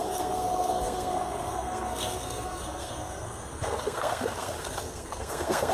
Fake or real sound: fake